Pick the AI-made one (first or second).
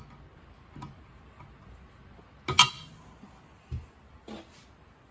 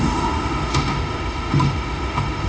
second